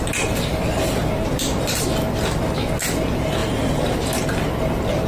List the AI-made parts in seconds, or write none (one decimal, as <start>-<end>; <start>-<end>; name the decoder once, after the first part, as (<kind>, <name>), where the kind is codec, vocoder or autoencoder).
1.0-1.7 (vocoder, BigVGAN v2)